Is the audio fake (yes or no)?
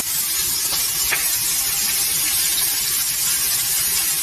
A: no